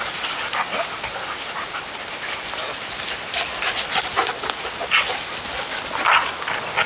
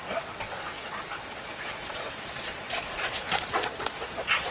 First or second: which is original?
first